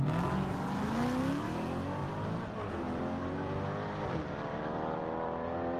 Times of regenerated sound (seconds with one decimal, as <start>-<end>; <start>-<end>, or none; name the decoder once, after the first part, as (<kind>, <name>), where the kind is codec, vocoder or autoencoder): 2.0-5.8 (vocoder, BigVGAN v2)